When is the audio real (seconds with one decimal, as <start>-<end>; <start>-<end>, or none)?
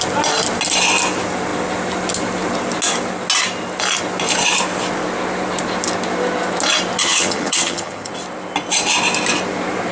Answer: 0.0-7.0; 8.1-9.9